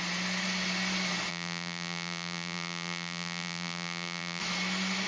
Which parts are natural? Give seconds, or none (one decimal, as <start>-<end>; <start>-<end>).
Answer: 0.0-1.3; 4.4-5.1